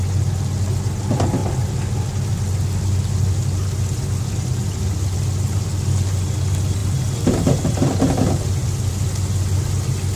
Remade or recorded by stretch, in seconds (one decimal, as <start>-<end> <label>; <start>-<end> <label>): 0.0-10.2 recorded